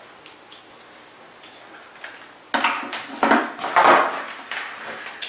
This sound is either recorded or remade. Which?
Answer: recorded